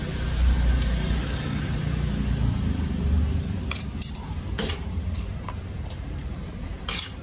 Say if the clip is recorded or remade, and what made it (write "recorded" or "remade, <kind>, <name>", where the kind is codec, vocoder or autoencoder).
remade, vocoder, BigVGAN v2